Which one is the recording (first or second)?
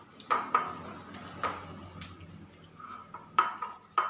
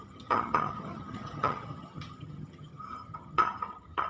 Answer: first